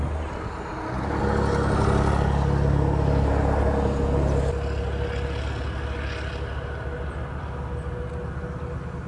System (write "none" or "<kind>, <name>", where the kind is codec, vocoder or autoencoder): none